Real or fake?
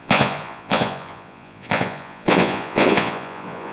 fake